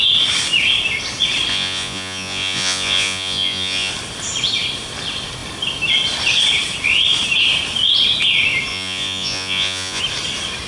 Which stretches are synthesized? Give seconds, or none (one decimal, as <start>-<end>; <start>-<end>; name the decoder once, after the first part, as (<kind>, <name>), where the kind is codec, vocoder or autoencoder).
1.5-3.9 (vocoder, Vocos); 8.7-10.0